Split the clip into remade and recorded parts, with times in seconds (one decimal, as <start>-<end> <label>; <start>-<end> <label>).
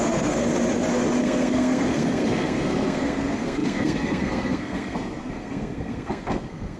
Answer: 0.0-0.5 remade; 0.5-1.2 recorded; 1.2-6.8 remade